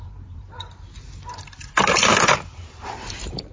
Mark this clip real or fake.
fake